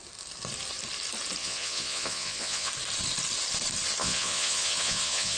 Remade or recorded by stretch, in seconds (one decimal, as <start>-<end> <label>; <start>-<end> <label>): 0.0-1.4 recorded; 1.4-2.7 remade; 2.7-4.0 recorded; 4.0-5.4 remade